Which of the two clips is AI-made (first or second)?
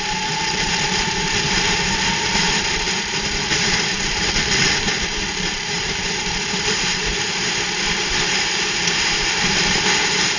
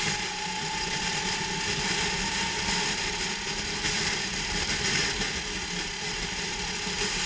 first